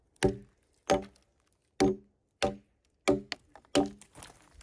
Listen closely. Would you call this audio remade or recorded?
recorded